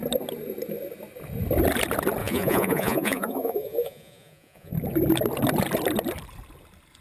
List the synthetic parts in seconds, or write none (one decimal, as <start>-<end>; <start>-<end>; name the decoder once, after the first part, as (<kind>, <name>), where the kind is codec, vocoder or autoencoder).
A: 2.2-4.7 (vocoder, Vocos)